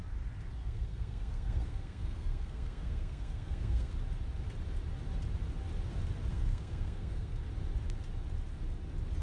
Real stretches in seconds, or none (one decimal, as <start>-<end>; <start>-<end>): 0.0-0.6; 3.9-6.3; 7.5-9.2